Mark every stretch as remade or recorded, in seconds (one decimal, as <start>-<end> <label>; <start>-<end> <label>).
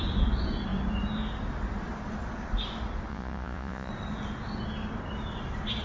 0.0-3.1 recorded; 3.1-3.9 remade; 3.9-5.8 recorded